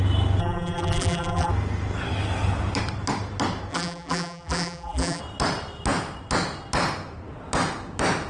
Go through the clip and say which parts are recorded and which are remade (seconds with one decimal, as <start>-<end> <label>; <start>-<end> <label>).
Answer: 0.0-0.4 recorded; 0.4-1.5 remade; 1.5-3.7 recorded; 3.7-5.2 remade; 5.2-8.3 recorded